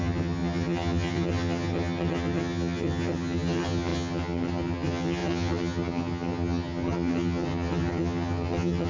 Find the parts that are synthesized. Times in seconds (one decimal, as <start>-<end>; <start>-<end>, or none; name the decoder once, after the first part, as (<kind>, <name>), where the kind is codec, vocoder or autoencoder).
0.0-8.9 (vocoder, HiFi-GAN)